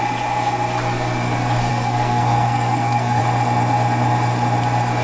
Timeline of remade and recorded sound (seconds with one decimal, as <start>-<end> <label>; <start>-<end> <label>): 0.0-1.7 recorded; 1.7-3.2 remade; 3.2-5.0 recorded